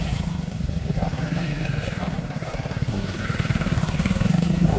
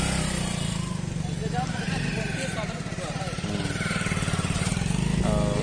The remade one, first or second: first